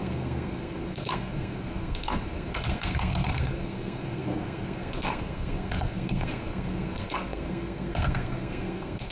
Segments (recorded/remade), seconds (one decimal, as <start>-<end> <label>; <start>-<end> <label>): 0.0-9.1 remade